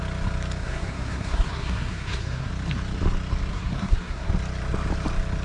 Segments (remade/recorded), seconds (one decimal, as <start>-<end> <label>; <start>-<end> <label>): 0.0-0.6 recorded; 0.6-2.5 remade; 2.5-3.5 recorded; 3.5-4.3 remade; 4.3-5.4 recorded